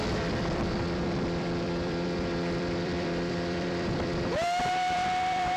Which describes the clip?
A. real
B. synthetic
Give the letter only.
B